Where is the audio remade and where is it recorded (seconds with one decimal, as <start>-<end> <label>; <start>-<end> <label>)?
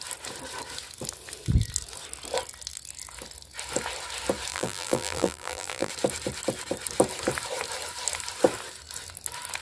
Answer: 0.0-4.5 recorded; 4.5-5.9 remade; 5.9-9.6 recorded